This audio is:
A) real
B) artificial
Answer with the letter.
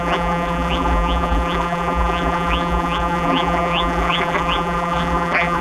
B